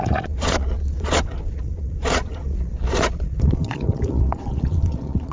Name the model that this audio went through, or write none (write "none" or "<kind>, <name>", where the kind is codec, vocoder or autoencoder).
vocoder, Vocos